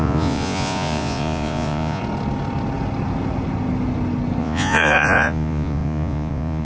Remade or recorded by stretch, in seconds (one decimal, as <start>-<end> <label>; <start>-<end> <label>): 0.0-2.0 remade; 2.0-4.4 recorded; 4.4-6.6 remade